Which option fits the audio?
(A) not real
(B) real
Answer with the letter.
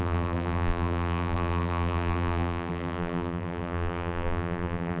A